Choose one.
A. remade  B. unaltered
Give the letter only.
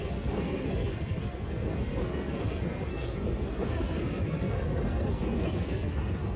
A